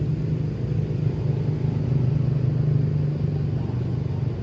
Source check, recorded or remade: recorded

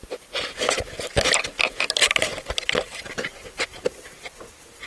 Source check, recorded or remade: recorded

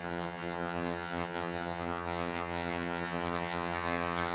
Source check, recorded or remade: remade